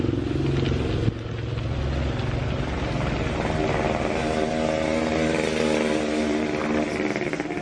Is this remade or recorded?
recorded